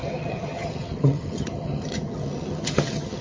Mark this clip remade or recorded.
remade